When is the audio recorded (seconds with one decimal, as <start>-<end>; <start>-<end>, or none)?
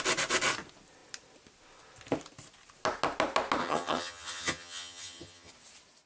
0.0-3.6; 5.5-6.1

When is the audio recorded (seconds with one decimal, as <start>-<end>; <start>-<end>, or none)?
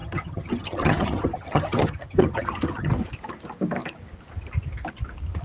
2.9-5.4